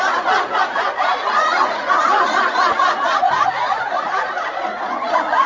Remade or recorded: remade